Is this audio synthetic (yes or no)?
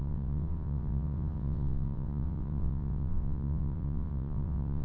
yes